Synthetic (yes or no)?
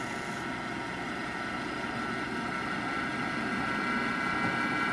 no